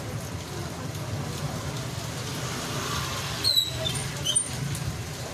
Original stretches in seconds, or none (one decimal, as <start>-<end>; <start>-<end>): 0.0-5.3